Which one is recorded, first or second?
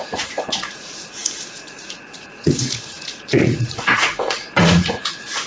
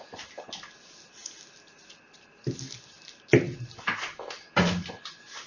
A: second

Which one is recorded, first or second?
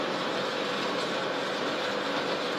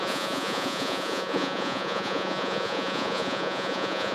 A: first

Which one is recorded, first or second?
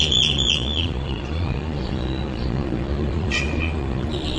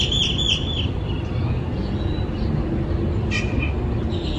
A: second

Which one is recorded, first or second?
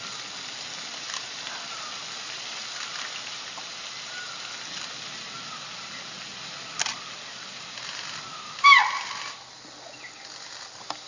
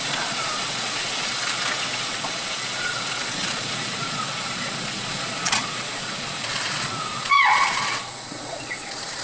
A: first